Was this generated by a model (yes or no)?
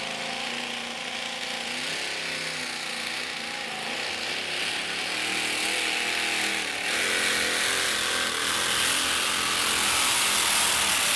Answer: no